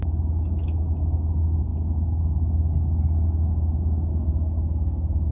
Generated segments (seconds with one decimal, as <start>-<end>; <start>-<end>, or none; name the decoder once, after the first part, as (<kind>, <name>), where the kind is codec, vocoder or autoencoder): none